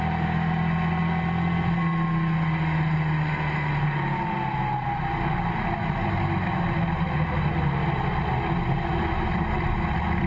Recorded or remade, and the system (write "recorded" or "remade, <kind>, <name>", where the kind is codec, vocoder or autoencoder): recorded